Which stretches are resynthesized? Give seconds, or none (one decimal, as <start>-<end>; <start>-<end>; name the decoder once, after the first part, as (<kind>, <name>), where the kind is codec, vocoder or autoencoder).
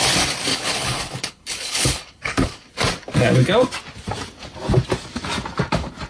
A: 0.5-2.7 (codec, HILCodec)